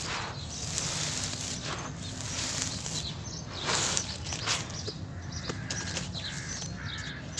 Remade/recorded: recorded